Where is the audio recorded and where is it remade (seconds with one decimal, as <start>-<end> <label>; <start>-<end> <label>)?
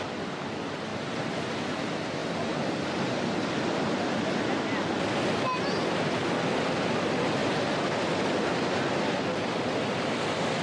0.0-0.9 recorded; 0.9-1.5 remade; 1.5-2.2 recorded; 2.2-3.3 remade; 3.3-7.4 recorded; 7.4-8.0 remade; 8.0-10.6 recorded